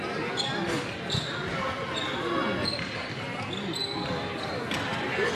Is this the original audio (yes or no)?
yes